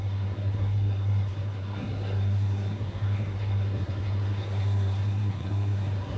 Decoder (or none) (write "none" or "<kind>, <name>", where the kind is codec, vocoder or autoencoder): codec, SNAC